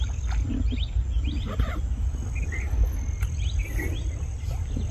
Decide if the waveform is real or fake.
real